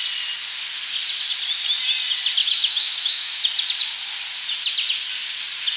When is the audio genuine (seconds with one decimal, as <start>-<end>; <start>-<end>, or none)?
0.0-2.4; 3.4-5.8